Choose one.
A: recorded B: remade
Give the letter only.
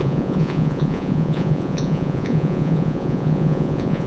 B